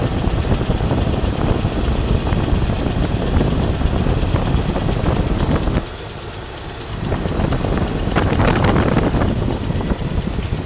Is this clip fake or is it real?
real